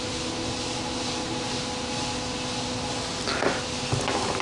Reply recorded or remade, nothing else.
recorded